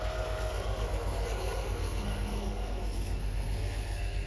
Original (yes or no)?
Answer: no